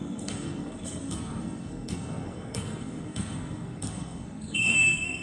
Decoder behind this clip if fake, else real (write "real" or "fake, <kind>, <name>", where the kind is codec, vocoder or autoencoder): fake, codec, SNAC